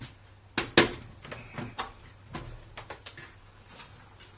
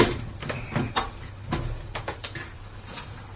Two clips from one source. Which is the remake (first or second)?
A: second